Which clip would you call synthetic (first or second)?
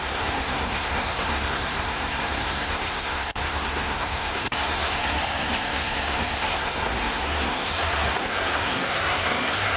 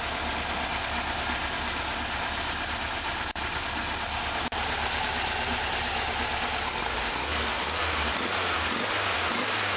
first